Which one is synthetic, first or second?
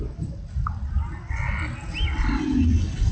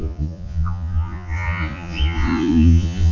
second